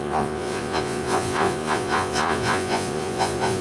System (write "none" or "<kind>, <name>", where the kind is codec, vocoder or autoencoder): vocoder, Vocos